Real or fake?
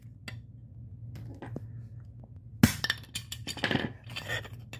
real